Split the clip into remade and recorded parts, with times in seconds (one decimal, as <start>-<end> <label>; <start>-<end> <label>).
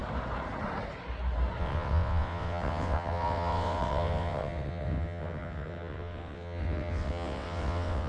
0.0-1.6 recorded; 1.6-8.1 remade